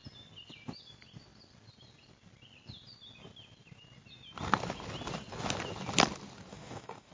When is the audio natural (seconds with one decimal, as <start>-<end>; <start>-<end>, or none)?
0.0-6.5